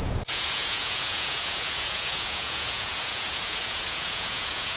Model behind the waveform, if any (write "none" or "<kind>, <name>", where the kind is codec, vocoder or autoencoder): vocoder, Vocos